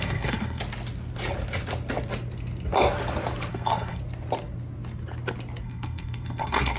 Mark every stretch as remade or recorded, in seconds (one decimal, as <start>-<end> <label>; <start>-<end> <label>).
0.0-0.6 remade; 0.6-3.5 recorded; 3.5-4.0 remade; 4.0-5.6 recorded; 5.6-6.8 remade